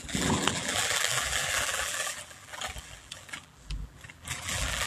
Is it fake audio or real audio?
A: fake